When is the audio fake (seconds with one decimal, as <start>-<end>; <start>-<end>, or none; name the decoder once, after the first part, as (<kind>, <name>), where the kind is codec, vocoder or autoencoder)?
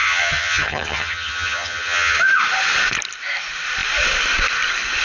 0.0-2.2 (vocoder, HiFi-GAN)